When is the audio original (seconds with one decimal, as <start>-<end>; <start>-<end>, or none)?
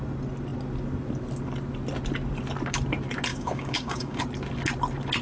0.0-3.3; 4.2-5.2